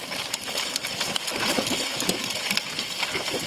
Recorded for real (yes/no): yes